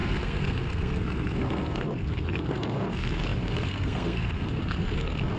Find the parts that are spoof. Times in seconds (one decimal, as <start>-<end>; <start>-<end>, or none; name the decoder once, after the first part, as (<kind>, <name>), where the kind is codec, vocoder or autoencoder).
0.0-5.4 (codec, SNAC)